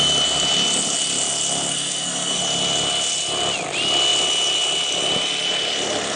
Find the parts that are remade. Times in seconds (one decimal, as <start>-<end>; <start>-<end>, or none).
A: 1.7-2.4